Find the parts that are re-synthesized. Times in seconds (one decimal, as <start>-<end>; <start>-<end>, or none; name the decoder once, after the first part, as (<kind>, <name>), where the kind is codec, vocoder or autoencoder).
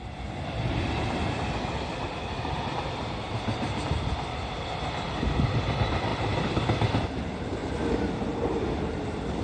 6.1-7.0 (vocoder, BigVGAN v2); 7.6-8.7